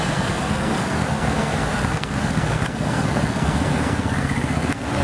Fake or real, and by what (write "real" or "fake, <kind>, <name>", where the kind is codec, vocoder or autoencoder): fake, codec, SNAC